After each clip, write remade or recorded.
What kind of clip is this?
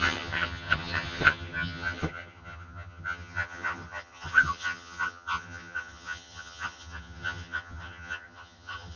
remade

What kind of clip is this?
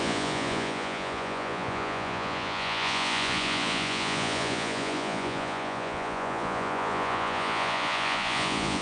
remade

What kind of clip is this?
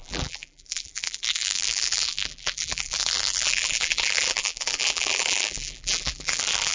remade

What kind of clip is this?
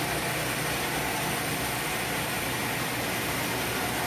recorded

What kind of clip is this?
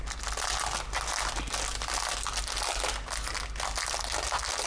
recorded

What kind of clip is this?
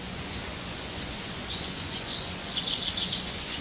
remade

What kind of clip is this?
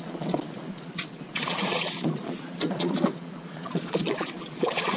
remade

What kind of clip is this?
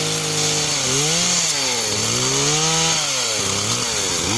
recorded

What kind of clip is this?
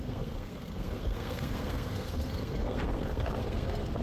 remade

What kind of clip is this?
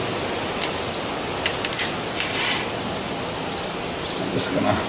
recorded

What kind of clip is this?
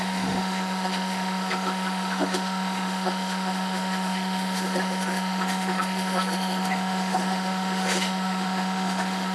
remade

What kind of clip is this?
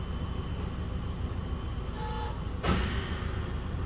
recorded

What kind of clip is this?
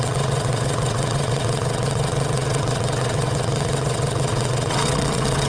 remade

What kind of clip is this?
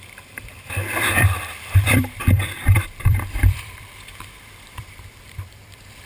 remade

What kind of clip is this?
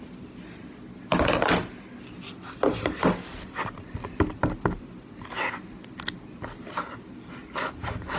recorded